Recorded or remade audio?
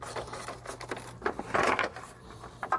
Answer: recorded